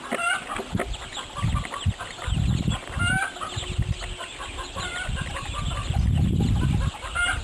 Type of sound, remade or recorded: recorded